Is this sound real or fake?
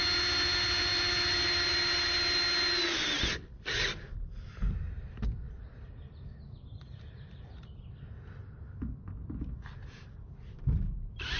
real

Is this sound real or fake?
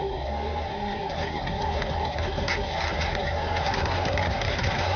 fake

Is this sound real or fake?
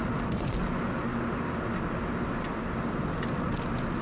real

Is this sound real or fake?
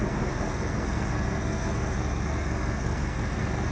fake